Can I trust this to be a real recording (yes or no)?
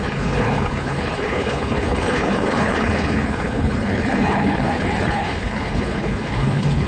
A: no